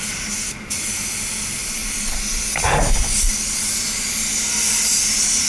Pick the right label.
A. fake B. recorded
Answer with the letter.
B